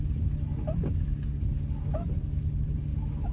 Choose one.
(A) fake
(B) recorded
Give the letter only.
B